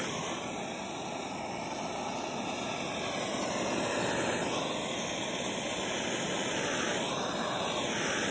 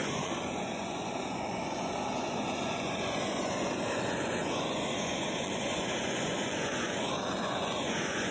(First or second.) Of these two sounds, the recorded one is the first